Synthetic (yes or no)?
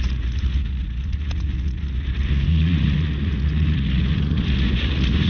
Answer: yes